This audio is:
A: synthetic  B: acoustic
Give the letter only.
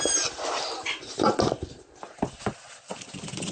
B